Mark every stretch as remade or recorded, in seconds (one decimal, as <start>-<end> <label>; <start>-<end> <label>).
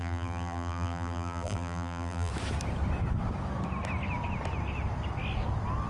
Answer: 0.0-2.3 remade; 2.3-5.9 recorded